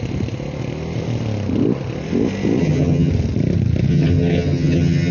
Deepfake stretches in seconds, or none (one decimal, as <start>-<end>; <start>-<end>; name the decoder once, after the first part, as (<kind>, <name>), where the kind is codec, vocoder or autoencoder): 2.6-3.1 (vocoder, HiFi-GAN); 3.9-5.1